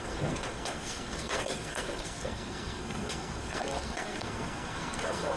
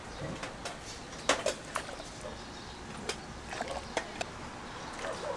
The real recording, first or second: second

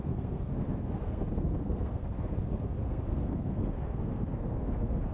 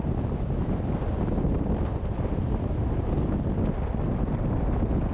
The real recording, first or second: second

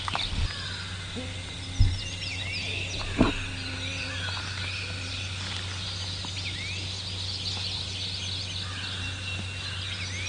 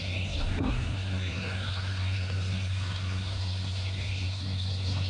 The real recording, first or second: first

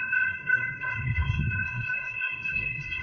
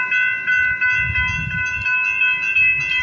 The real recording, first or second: second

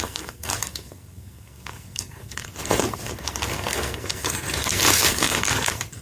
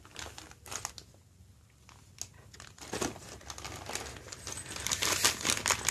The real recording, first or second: second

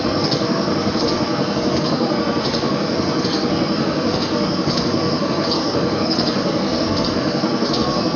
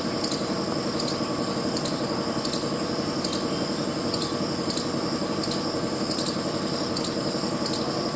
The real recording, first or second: second